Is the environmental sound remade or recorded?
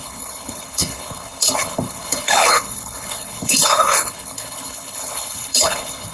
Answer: remade